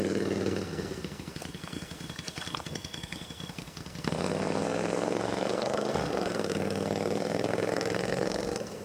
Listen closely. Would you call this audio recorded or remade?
remade